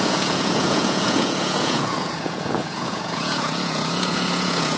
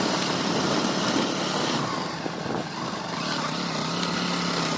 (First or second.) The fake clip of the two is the first